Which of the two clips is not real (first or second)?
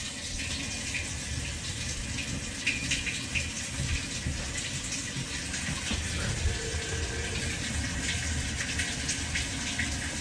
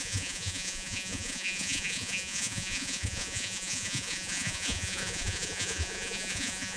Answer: second